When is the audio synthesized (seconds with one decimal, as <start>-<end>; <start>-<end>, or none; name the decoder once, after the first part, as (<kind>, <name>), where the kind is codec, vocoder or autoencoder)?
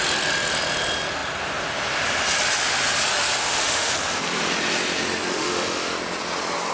3.4-3.9 (autoencoder, DAC-VAE); 5.3-5.9